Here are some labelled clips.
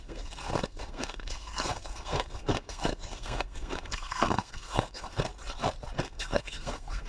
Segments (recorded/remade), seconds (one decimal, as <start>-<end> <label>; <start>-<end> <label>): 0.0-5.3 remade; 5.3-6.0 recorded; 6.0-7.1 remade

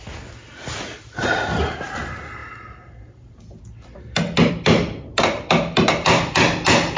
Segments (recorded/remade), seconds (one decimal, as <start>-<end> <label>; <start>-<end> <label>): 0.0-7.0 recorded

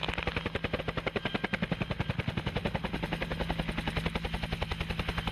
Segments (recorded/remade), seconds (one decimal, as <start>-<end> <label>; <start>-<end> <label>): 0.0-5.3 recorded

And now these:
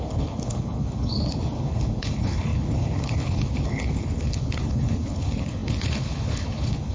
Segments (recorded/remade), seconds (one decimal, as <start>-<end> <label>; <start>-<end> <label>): 0.0-6.9 remade

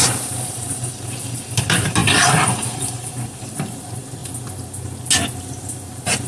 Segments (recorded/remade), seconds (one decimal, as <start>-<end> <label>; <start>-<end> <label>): 0.0-4.2 remade; 4.2-5.5 recorded; 5.5-6.3 remade